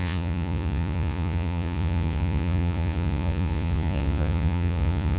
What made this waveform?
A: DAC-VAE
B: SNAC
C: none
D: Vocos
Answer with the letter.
D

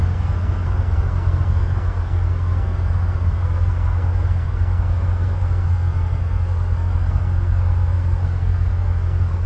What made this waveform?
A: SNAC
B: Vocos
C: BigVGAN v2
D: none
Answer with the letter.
A